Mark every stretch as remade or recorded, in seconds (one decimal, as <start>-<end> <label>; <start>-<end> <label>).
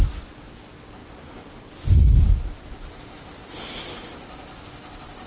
0.0-5.3 recorded